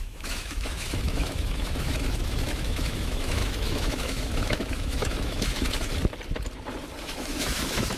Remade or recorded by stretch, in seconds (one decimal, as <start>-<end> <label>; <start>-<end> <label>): 0.0-5.9 remade; 5.9-7.0 recorded; 7.0-8.0 remade